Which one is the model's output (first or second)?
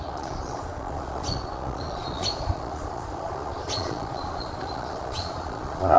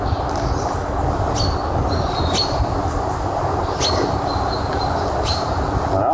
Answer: first